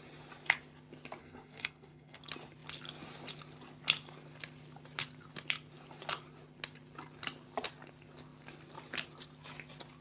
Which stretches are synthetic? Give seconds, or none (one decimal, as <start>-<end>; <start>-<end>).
1.2-2.2